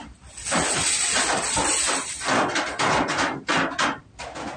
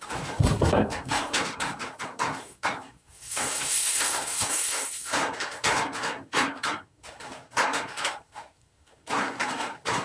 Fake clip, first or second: second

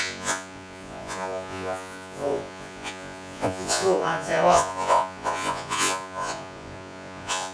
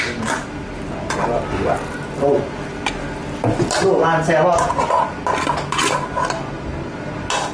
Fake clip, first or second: first